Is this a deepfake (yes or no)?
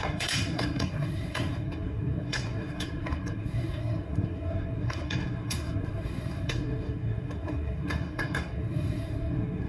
yes